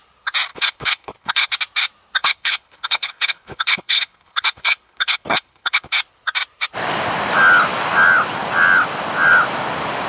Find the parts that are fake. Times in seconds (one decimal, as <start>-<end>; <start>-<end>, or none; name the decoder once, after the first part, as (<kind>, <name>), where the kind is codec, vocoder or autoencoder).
0.5-1.5 (codec, HILCodec); 2.2-5.9